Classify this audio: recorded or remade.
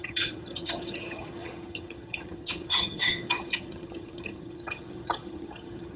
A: remade